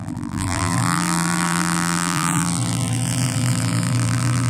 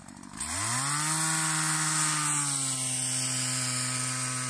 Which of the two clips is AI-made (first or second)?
first